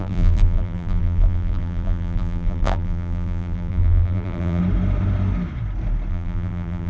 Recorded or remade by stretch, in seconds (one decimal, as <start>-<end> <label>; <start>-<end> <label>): 0.0-4.6 remade; 4.6-6.1 recorded; 6.1-6.9 remade